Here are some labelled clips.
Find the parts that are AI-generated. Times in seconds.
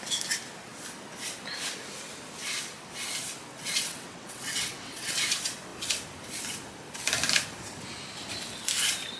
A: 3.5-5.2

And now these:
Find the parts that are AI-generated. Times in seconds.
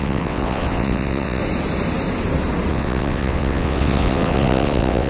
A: 0.0-1.4; 2.7-5.1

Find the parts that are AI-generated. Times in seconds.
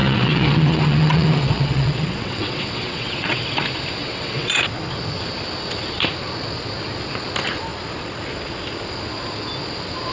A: 0.0-3.4; 4.0-4.5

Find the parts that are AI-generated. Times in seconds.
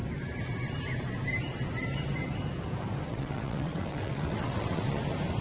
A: 3.1-5.0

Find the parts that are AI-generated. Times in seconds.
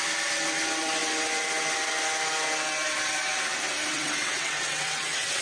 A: 3.9-5.4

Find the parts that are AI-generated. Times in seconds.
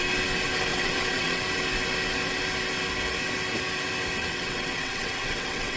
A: 0.7-1.4; 4.2-5.8